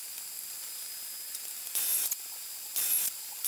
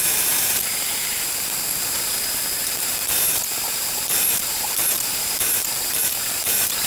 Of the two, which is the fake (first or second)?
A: second